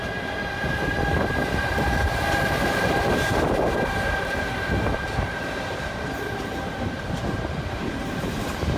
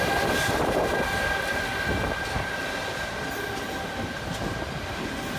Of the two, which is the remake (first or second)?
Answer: first